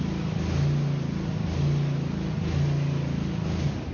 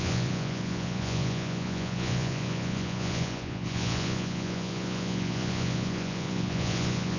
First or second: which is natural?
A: first